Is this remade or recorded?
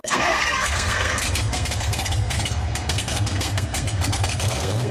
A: remade